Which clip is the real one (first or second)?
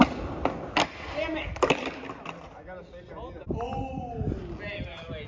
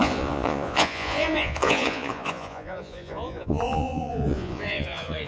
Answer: first